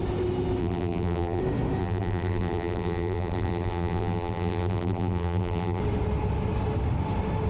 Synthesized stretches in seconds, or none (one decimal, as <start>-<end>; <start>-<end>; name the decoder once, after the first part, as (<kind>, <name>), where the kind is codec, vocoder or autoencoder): 0.6-1.4 (vocoder, BigVGAN v2); 1.8-5.8